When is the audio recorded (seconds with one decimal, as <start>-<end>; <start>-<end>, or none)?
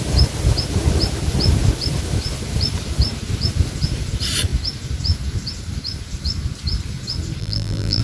0.0-7.4